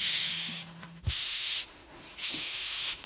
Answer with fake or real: fake